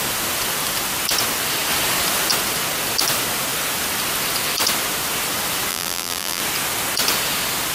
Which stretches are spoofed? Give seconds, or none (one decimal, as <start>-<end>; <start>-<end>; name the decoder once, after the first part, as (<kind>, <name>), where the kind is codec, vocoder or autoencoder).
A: 5.7-6.4 (vocoder, BigVGAN v2)